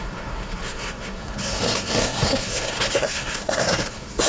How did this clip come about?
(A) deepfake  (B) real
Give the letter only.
A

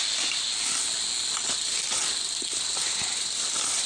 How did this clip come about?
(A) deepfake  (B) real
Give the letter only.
B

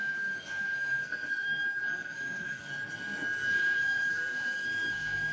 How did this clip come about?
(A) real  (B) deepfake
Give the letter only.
B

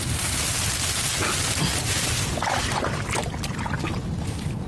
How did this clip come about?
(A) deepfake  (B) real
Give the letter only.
B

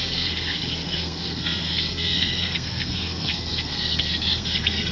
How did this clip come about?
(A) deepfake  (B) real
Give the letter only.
A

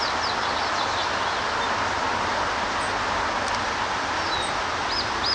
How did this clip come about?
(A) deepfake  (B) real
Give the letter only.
B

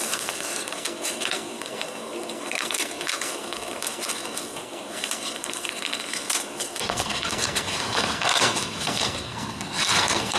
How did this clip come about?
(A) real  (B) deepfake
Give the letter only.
B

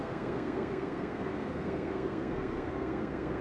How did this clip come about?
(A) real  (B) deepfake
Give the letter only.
B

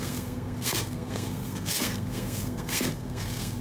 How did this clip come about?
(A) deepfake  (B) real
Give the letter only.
A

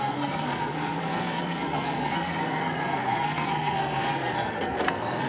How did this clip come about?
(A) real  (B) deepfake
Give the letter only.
B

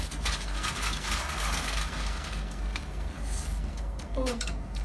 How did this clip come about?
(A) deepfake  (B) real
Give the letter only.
A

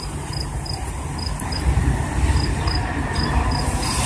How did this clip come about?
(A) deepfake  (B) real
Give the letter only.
B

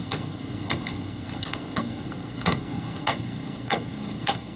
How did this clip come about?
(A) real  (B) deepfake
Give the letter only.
B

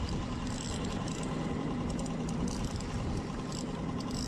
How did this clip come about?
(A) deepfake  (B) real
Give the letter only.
B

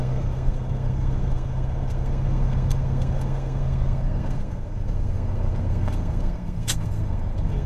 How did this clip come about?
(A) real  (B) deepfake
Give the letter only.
B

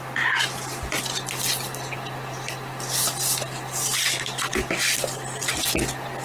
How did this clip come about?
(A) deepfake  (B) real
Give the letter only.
B